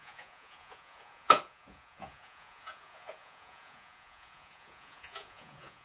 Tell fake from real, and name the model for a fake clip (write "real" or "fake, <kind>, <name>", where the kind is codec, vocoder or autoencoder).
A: fake, vocoder, Vocos